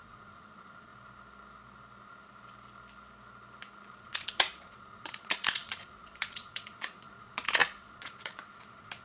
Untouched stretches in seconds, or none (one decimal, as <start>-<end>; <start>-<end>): 0.9-4.0